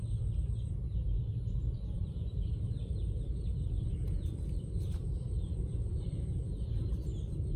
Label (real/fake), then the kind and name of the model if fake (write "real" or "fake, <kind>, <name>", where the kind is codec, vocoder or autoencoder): fake, vocoder, BigVGAN v2